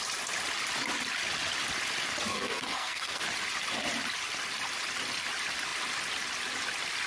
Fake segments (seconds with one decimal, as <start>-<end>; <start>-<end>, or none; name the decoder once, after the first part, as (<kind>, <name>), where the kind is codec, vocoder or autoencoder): 2.3-3.2 (codec, SNAC)